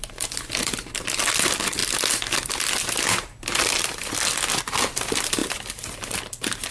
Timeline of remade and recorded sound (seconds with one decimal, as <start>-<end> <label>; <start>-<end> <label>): 0.0-6.7 recorded